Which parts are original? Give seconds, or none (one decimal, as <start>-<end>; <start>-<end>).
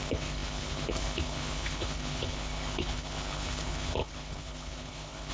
none